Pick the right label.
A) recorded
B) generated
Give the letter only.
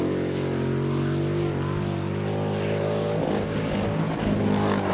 A